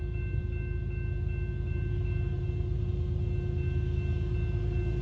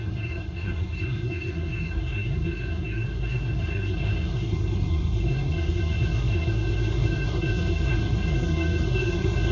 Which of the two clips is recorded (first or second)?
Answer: first